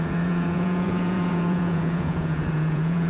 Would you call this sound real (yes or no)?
no